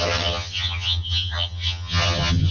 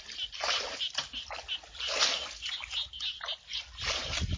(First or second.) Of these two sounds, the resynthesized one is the first